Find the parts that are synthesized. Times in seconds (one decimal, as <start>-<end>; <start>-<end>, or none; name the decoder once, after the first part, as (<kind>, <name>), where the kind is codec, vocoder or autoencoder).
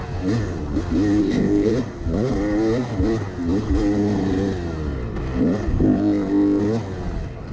1.2-1.7 (codec, ZipCodec); 5.7-6.6